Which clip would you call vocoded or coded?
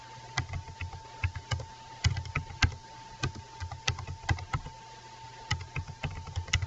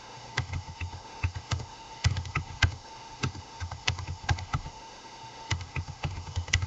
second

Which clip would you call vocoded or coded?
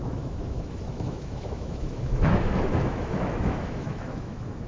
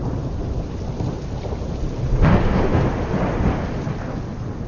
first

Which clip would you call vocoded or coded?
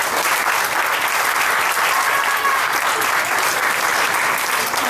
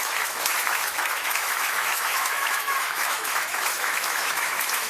second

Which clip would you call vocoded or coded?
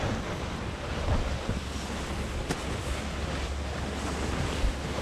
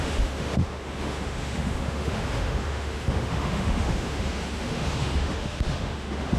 second